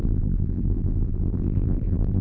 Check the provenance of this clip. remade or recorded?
remade